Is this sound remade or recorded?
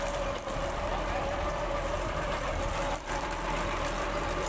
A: remade